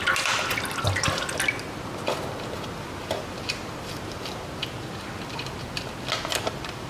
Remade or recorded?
recorded